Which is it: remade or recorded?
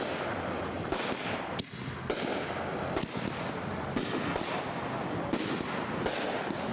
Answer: recorded